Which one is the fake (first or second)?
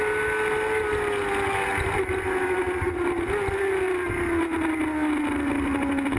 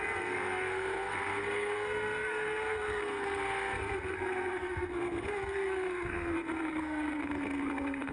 second